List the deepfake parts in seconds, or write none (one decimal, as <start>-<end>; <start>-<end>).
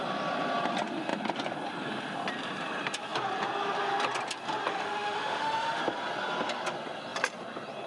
4.7-5.8